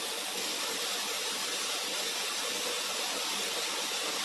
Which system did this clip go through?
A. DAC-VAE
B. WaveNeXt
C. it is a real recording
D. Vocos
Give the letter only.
C